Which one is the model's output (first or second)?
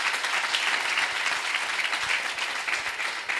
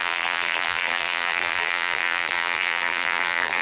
second